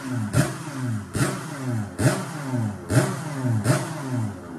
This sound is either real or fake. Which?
real